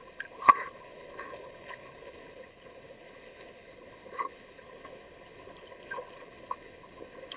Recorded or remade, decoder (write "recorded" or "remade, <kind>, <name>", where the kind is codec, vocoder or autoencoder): remade, codec, HILCodec